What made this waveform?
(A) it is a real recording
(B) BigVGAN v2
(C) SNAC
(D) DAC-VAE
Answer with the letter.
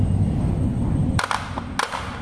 A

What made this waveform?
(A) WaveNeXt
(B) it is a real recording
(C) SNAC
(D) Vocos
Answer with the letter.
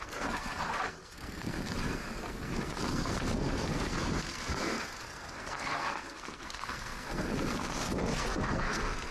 C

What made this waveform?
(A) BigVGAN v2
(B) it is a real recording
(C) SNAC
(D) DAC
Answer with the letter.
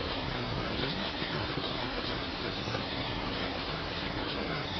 C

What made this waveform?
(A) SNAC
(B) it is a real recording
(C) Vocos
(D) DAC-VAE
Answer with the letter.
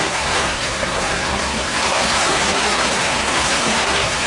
A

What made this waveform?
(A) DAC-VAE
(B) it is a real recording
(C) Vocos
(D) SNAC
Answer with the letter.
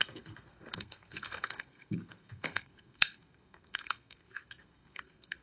D